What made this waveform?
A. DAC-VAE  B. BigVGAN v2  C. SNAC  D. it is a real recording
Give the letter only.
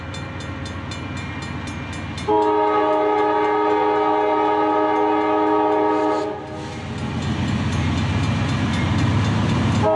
D